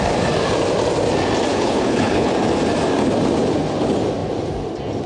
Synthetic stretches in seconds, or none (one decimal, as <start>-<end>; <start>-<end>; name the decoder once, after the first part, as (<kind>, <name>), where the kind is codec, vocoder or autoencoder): 1.5-2.3 (codec, HILCodec)